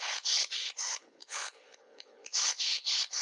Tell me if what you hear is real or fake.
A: fake